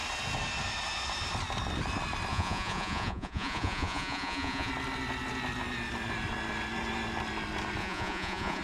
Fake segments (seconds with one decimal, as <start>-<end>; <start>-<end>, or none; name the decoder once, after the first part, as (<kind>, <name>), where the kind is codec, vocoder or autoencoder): 2.3-4.7 (vocoder, Vocos); 7.8-8.6